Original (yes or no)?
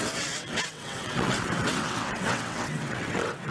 no